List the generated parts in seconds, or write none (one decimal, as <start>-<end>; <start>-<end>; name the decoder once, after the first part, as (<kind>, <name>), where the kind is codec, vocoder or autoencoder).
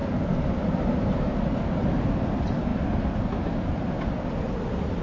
none